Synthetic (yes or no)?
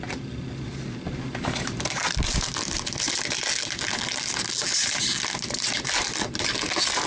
no